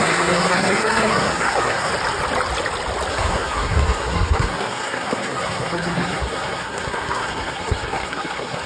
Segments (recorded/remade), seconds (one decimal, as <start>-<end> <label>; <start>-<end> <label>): 0.0-1.9 remade; 1.9-3.1 recorded; 3.1-8.7 remade